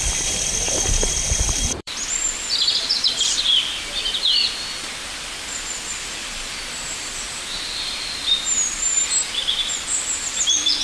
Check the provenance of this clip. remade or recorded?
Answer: remade